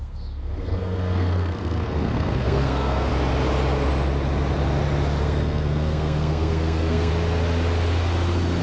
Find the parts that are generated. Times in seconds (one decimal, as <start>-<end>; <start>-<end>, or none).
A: 0.0-3.1; 5.2-7.1